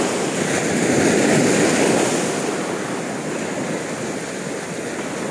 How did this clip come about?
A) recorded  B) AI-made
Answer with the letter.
A